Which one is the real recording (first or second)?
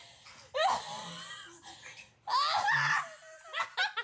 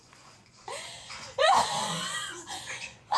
first